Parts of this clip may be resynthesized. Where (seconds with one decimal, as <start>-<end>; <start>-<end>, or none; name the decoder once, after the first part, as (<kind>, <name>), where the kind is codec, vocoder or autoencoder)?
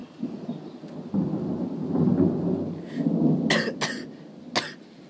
none